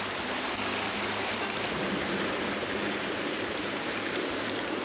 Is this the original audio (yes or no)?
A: no